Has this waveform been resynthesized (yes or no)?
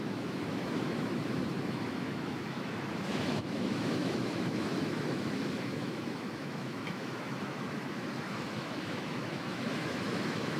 yes